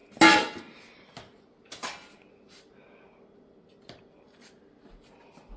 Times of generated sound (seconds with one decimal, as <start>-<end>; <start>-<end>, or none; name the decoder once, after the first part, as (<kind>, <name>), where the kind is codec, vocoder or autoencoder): none